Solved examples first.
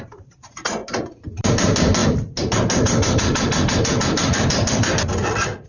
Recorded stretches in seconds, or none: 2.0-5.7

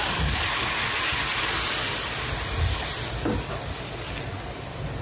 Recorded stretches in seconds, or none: 0.0-5.0

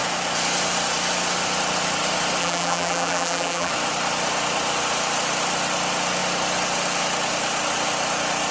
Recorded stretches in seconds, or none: 0.0-2.4; 3.7-8.5

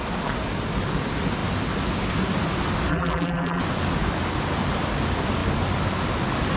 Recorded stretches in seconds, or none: 0.0-2.9; 3.6-6.6

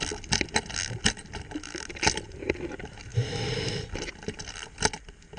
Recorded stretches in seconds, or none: 0.0-5.4

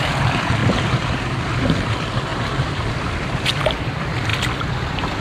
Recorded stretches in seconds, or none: 4.3-5.2

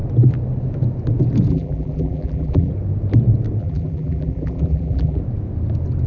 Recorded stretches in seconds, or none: 0.0-1.5; 2.7-3.6; 5.2-6.1

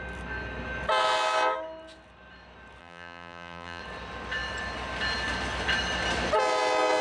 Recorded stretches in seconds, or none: 0.0-2.8; 3.8-7.0